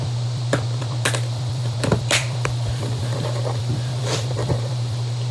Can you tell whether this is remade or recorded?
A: remade